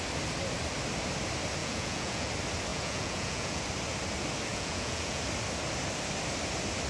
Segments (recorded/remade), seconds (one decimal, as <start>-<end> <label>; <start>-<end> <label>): 0.0-1.6 recorded; 1.6-2.3 remade; 2.3-2.7 recorded; 2.7-3.6 remade; 3.6-4.5 recorded; 4.5-5.2 remade; 5.2-6.9 recorded